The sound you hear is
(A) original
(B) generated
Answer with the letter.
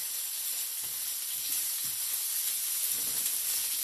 A